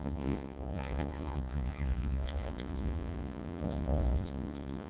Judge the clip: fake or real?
fake